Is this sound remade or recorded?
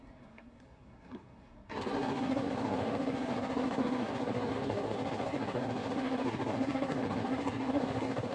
remade